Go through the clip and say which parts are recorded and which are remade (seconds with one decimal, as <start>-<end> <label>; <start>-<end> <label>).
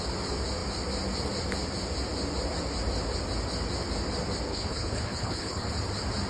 0.0-4.5 recorded; 4.5-5.7 remade; 5.7-6.3 recorded